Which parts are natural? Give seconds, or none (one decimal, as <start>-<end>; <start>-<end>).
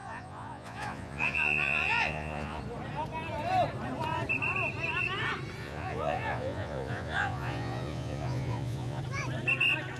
2.6-5.6; 9.0-10.0